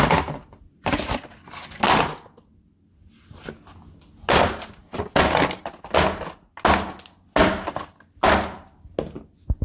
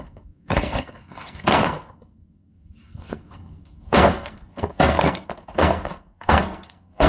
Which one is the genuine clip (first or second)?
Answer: first